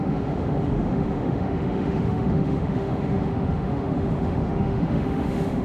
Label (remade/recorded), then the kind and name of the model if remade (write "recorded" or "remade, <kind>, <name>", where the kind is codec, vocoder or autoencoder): remade, autoencoder, DAC-VAE